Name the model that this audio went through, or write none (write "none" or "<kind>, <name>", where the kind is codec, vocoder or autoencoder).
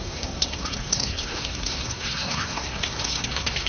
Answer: codec, SNAC